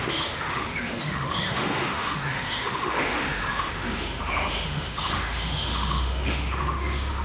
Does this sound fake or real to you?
fake